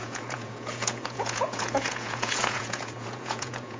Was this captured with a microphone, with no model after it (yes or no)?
no